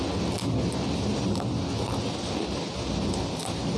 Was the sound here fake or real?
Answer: real